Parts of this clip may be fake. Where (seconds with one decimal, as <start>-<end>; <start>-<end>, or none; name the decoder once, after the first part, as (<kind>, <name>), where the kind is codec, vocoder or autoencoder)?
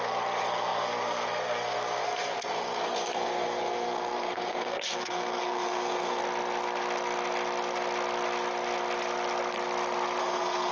0.0-6.2 (codec, SNAC); 10.2-10.7